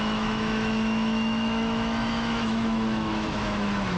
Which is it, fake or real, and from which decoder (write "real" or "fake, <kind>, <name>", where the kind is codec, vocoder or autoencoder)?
fake, autoencoder, DAC-VAE